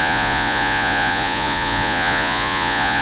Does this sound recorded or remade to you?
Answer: remade